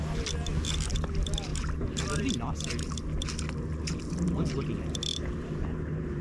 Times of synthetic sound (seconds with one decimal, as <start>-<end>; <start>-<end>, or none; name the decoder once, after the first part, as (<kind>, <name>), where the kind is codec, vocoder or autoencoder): 1.5-2.0 (vocoder, BigVGAN v2); 5.1-6.2